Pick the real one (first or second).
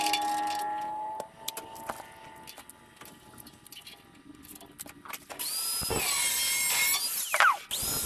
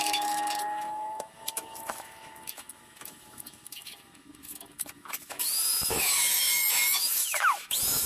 first